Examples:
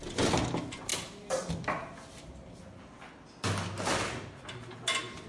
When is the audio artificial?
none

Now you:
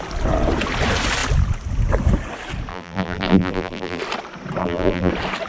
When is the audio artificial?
2.7-4.0 (vocoder, BigVGAN v2); 4.6-5.1

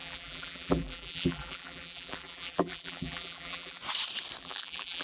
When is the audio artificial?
0.0-3.8 (vocoder, BigVGAN v2); 4.4-5.0

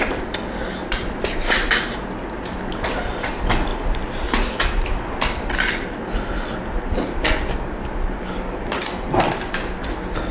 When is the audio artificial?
0.8-2.0 (vocoder, BigVGAN v2); 3.7-5.0

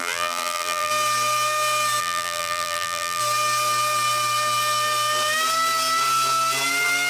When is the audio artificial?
0.0-0.9 (vocoder, BigVGAN v2); 2.0-3.2

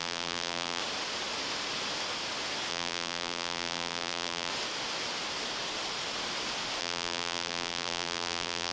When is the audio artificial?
0.0-0.8 (vocoder, BigVGAN v2); 2.7-4.5; 6.8-8.7

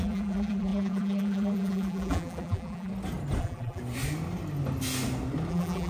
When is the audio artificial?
0.0-2.9 (vocoder, BigVGAN v2); 3.4-3.8; 5.5-5.9